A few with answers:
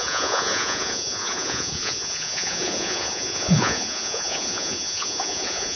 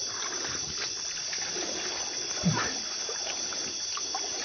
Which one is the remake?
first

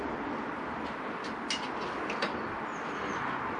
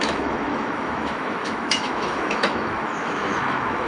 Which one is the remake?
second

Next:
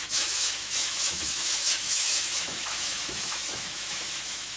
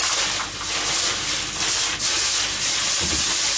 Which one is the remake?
first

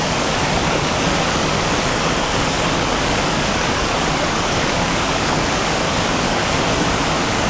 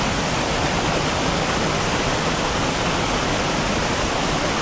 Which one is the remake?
first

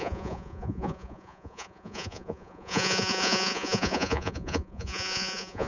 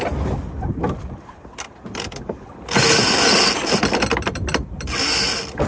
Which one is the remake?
first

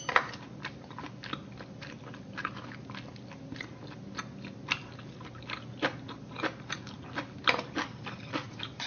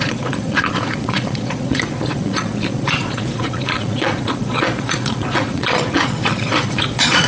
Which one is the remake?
second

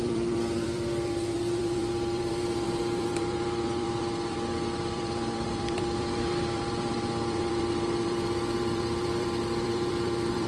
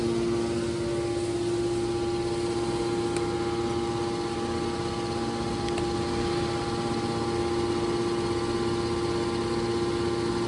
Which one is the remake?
first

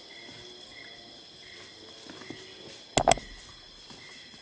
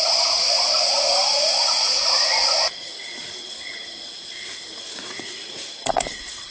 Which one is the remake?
second